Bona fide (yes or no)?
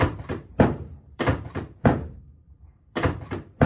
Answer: no